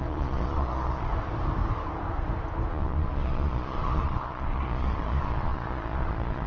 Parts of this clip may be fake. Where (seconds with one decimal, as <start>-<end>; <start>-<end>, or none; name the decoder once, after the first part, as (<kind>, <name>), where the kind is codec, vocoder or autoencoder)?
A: 0.0-1.1 (vocoder, Vocos); 2.7-6.5